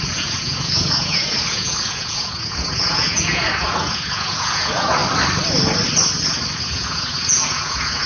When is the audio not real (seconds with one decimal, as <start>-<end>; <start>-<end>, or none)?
0.0-5.0; 6.6-8.1